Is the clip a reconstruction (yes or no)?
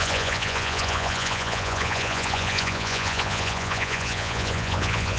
yes